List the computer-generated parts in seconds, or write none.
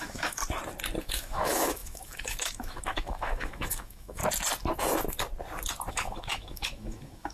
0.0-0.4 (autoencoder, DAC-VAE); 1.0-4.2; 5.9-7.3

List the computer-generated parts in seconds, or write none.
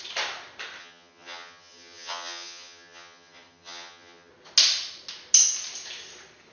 0.8-4.3 (vocoder, HiFi-GAN)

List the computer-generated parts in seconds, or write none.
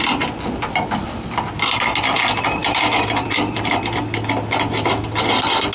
2.6-4.0 (vocoder, BigVGAN v2)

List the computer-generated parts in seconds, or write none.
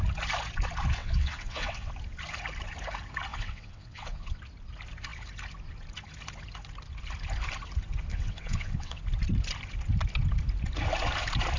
1.0-1.9 (vocoder, WaveNeXt); 3.3-4.4; 8.1-9.0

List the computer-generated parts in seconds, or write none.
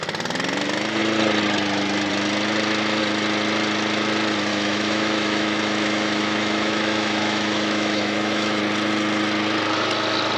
4.5-8.6 (autoencoder, DAC-VAE)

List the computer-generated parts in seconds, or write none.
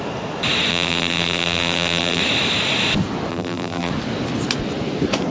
0.7-2.2 (vocoder, BigVGAN v2); 3.3-3.9